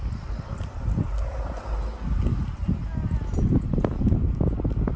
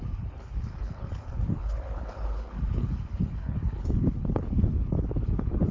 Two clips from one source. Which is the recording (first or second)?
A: first